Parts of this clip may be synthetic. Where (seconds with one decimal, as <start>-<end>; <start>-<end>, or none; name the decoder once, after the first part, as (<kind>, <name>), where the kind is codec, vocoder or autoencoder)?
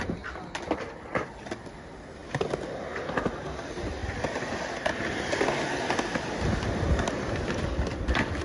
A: 4.0-4.7 (vocoder, BigVGAN v2)